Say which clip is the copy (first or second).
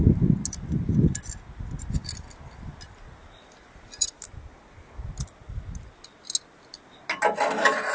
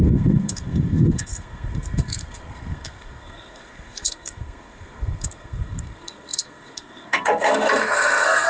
second